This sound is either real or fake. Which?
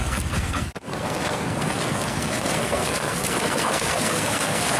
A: fake